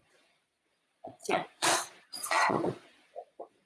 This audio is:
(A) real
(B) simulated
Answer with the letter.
B